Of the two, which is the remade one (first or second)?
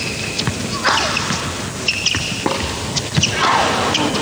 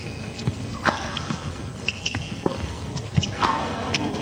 second